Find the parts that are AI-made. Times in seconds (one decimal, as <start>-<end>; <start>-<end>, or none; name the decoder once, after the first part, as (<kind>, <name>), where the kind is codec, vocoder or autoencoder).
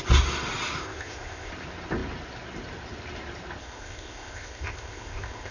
0.8-1.5 (codec, ZipCodec); 3.6-5.5